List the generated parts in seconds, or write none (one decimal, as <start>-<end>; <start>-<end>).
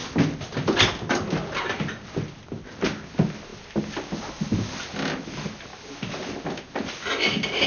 none